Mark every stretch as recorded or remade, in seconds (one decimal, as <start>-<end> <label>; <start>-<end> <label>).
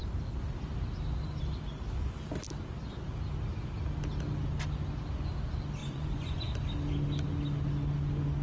0.0-5.8 recorded; 5.8-6.4 remade; 6.4-8.4 recorded